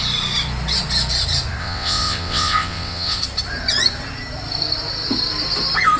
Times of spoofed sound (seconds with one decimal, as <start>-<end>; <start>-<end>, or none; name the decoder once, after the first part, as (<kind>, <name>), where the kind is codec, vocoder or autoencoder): 1.6-3.2 (vocoder, WaveNeXt)